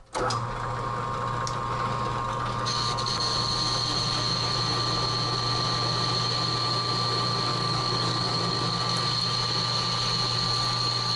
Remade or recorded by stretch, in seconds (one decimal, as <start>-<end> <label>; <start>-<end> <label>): 0.0-2.3 recorded; 2.3-3.1 remade; 3.1-7.5 recorded; 7.5-8.4 remade; 8.4-11.2 recorded